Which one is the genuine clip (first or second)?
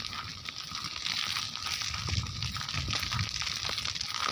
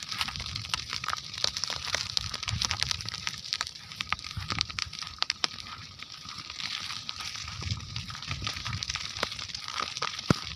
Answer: first